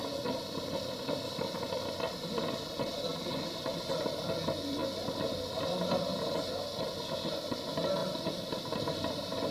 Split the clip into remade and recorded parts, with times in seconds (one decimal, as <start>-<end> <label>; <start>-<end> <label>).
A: 0.0-3.1 recorded; 3.1-3.9 remade; 3.9-8.0 recorded; 8.0-9.5 remade